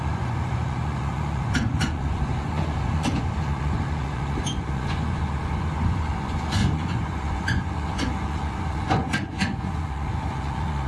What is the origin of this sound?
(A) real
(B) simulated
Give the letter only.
B